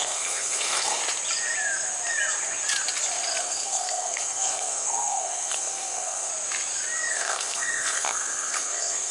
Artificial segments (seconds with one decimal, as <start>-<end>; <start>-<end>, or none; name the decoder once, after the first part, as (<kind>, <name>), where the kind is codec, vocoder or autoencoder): 0.0-1.0 (codec, SNAC); 3.4-6.3; 7.1-9.1